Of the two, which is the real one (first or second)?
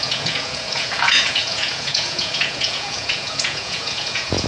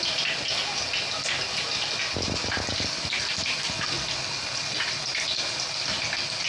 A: second